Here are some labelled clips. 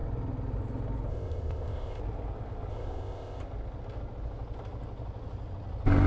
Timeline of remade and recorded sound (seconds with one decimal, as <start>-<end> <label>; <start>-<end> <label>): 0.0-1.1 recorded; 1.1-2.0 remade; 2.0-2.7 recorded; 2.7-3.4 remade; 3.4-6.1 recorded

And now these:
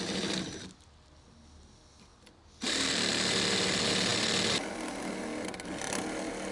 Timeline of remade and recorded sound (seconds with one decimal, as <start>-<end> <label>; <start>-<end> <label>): 0.0-6.5 recorded

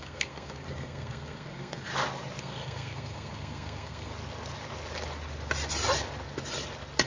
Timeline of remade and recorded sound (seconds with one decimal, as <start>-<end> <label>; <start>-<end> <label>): 0.0-1.9 remade; 1.9-2.4 recorded; 2.4-4.1 remade; 4.1-7.1 recorded